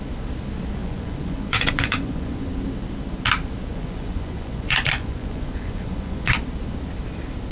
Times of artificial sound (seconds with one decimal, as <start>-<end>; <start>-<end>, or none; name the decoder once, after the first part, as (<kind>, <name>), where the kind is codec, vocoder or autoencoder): 0.8-2.5 (vocoder, Vocos); 3.7-6.4